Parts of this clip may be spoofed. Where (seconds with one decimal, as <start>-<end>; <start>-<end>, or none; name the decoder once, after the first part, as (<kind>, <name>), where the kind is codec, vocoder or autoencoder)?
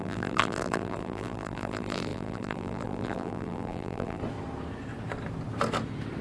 0.0-4.2 (vocoder, BigVGAN v2)